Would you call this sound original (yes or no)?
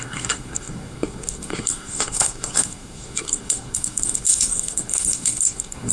no